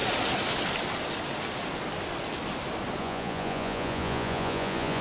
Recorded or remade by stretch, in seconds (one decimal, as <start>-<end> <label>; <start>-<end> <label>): 0.0-3.0 recorded; 3.0-5.0 remade